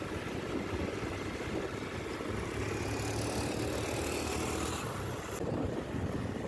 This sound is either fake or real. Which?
real